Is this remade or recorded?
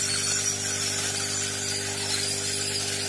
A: recorded